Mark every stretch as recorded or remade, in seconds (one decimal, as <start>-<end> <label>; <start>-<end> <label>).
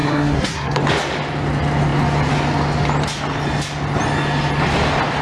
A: 0.0-0.8 remade; 0.8-5.2 recorded